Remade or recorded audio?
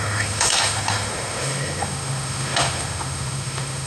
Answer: remade